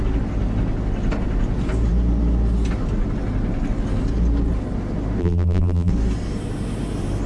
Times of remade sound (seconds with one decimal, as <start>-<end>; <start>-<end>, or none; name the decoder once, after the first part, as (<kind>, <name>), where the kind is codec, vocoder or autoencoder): 5.2-5.9 (vocoder, BigVGAN v2)